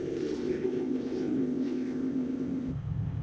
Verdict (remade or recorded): remade